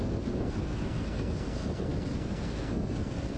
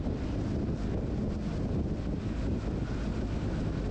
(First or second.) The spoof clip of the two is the first